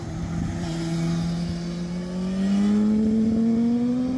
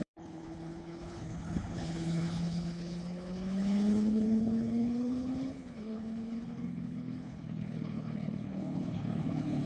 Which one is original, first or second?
first